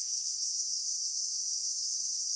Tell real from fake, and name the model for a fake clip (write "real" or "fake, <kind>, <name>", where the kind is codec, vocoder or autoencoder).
fake, autoencoder, DAC-VAE